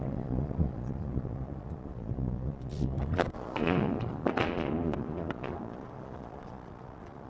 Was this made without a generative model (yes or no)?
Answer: no